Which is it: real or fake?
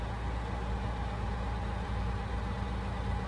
real